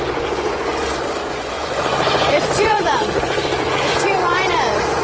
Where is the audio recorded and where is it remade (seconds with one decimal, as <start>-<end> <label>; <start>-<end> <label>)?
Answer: 0.0-0.7 remade; 0.7-1.3 recorded; 1.3-5.0 remade